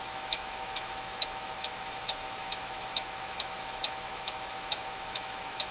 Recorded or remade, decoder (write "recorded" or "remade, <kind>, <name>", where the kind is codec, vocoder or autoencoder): remade, autoencoder, DAC-VAE